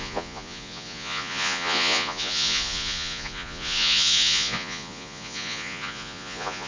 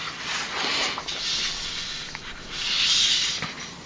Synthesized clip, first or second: first